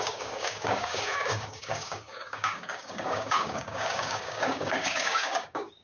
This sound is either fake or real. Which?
fake